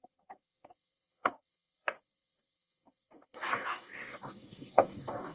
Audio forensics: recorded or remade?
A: remade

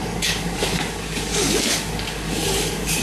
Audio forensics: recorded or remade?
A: remade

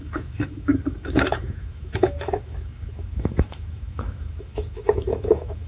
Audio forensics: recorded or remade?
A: remade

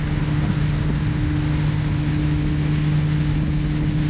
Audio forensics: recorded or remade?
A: recorded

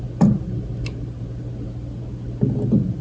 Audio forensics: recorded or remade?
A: recorded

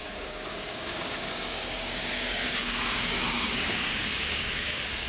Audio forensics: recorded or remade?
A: remade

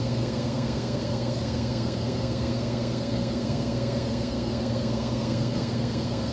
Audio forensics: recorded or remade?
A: remade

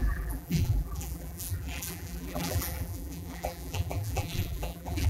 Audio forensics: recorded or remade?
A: remade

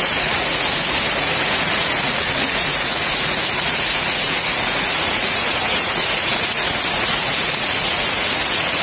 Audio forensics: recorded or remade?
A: remade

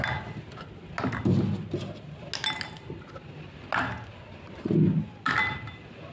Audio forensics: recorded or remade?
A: recorded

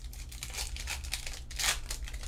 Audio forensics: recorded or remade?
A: recorded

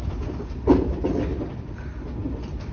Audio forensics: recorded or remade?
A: recorded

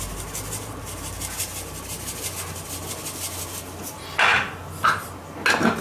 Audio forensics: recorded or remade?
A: recorded